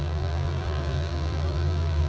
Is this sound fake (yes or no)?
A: yes